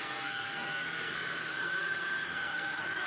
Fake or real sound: fake